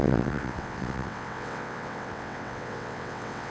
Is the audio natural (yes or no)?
no